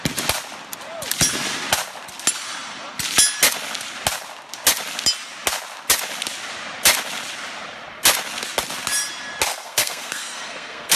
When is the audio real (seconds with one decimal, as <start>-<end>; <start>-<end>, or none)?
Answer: 0.0-9.5